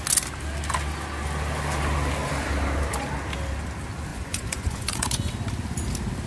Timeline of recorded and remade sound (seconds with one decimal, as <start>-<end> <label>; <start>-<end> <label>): 0.0-4.1 recorded; 4.1-5.3 remade; 5.3-6.3 recorded